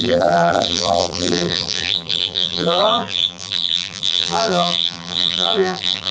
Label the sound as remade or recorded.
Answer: remade